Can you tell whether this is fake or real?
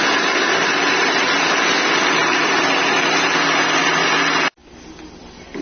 real